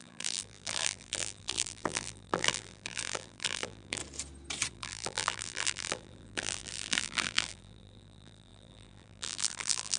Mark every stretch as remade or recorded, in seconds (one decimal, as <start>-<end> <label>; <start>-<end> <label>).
0.0-4.0 remade; 4.0-4.7 recorded; 4.7-10.0 remade